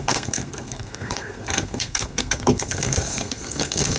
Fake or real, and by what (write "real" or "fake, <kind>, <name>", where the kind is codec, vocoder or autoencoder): fake, codec, SNAC